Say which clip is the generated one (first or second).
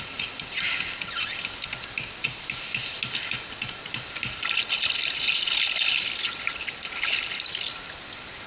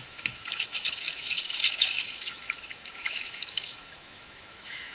second